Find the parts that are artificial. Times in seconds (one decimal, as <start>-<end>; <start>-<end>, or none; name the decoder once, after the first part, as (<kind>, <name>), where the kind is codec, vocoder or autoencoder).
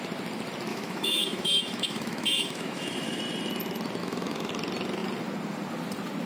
0.7-3.2 (autoencoder, DAC-VAE); 4.0-4.5